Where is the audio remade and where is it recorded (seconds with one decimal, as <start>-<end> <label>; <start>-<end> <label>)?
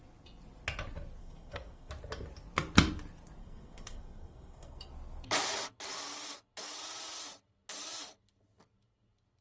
0.0-1.2 recorded; 1.2-1.9 remade; 1.9-3.4 recorded; 3.4-4.9 remade; 4.9-9.4 recorded